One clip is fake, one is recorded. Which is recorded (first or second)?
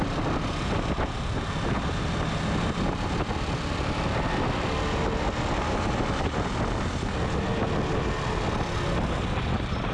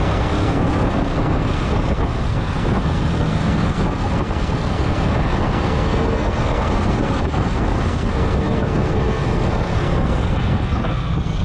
first